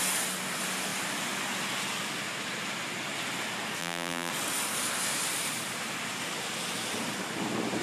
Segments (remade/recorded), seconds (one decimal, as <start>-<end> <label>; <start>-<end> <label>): 0.0-3.8 recorded; 3.8-4.3 remade; 4.3-7.8 recorded